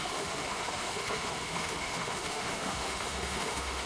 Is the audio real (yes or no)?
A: no